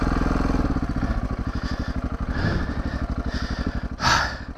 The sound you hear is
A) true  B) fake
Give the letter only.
A